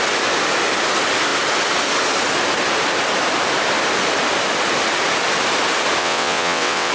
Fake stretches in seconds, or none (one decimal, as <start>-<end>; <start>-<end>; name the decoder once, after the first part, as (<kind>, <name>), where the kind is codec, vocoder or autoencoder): 6.0-6.9 (vocoder, WaveNeXt)